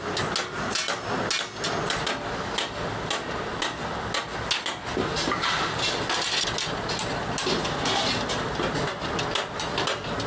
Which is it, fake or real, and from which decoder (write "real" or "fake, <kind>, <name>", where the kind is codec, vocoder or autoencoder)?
real